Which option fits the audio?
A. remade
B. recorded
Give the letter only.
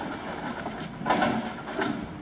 B